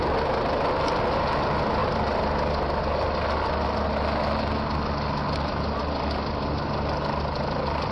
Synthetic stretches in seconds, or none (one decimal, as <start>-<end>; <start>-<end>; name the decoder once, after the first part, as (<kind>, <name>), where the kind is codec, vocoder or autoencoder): none